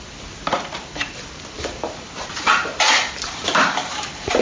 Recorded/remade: remade